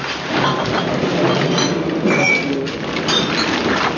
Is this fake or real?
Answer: real